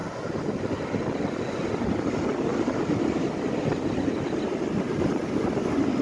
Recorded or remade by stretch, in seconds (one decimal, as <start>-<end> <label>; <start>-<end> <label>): 0.0-6.0 recorded